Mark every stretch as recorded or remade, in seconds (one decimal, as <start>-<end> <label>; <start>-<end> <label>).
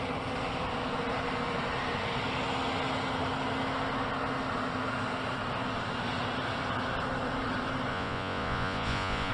0.0-7.9 recorded; 7.9-9.3 remade